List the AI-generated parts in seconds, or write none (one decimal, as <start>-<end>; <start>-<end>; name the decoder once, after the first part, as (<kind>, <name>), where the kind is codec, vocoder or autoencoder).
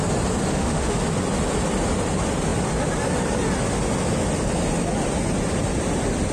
0.5-1.0 (autoencoder, DAC-VAE)